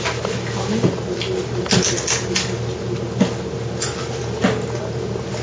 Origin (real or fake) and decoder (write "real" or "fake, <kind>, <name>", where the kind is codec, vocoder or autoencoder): real